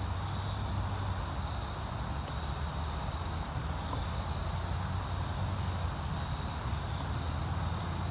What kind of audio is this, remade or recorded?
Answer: recorded